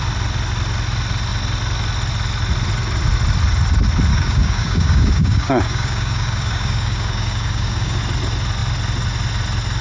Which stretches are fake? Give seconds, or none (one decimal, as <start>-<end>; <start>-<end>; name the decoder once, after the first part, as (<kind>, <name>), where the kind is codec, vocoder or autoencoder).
4.1-8.0 (codec, DAC)